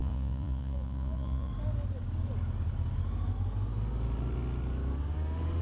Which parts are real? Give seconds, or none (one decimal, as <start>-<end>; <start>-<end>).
1.5-5.6